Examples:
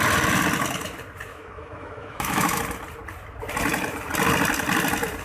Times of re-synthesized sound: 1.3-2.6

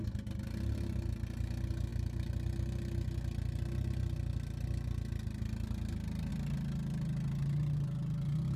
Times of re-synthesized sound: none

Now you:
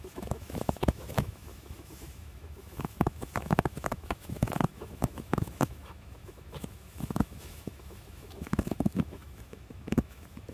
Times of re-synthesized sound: 0.0-10.5